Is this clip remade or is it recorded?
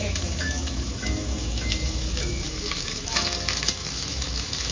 remade